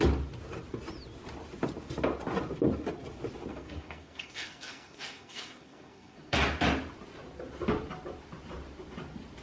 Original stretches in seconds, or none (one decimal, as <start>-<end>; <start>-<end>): 0.0-3.5; 6.4-9.4